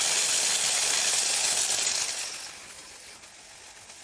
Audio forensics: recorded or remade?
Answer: recorded